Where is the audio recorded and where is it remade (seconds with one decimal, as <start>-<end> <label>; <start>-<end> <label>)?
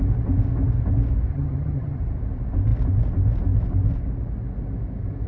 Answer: 0.0-1.3 recorded; 1.3-2.0 remade; 2.0-5.3 recorded